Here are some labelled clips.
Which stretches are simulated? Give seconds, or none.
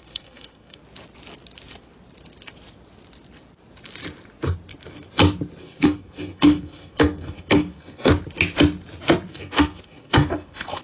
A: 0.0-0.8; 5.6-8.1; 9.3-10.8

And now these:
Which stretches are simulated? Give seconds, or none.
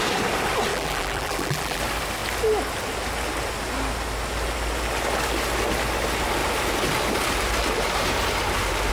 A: 0.7-1.8